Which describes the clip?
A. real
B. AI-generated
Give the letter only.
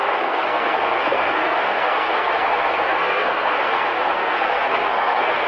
B